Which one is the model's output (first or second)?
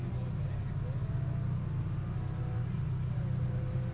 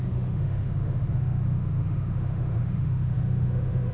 second